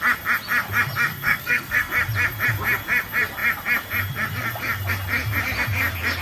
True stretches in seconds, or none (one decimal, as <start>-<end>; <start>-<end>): 0.0-1.1; 1.9-6.2